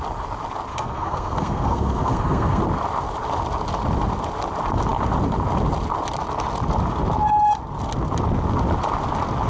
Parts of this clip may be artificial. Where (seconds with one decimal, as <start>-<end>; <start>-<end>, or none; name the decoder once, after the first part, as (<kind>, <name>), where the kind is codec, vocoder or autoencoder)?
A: 0.7-2.6 (codec, SNAC)